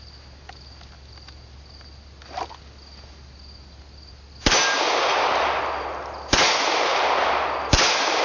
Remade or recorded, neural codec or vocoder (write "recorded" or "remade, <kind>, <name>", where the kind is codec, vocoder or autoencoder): recorded